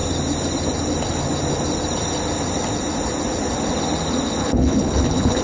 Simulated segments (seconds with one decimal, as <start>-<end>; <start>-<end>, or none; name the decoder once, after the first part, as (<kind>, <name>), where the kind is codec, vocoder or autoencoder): 4.4-5.4 (codec, HILCodec)